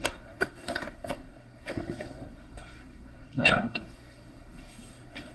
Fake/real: fake